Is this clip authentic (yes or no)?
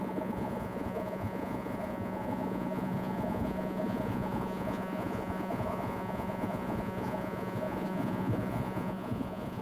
no